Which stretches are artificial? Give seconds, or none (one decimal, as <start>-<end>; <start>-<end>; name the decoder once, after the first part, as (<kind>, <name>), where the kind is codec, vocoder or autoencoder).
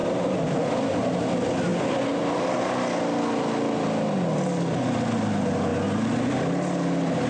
none